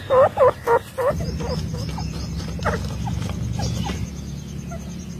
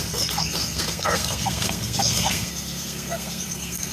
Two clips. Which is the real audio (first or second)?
first